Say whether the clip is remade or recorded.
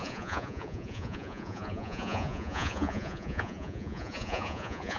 remade